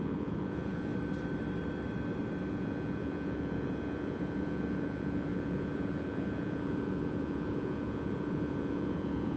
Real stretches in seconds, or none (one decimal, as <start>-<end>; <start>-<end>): 0.9-2.5